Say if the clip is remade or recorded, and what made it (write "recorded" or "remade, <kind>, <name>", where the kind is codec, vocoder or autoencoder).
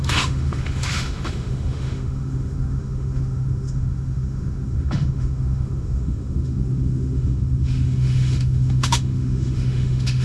remade, autoencoder, DAC-VAE